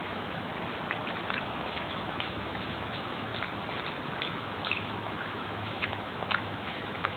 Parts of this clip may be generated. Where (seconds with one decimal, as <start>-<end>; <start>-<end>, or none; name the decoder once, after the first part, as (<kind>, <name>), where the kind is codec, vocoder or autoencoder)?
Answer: 0.0-0.5 (autoencoder, DAC-VAE); 1.4-3.3; 4.2-7.2